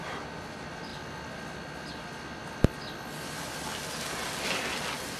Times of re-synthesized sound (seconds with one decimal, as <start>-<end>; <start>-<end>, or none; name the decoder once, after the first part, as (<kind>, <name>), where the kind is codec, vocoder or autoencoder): none